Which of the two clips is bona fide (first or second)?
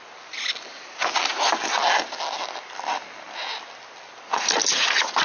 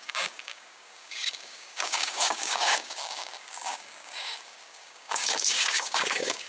first